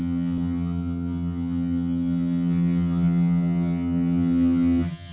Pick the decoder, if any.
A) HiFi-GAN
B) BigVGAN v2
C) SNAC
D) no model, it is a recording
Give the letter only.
A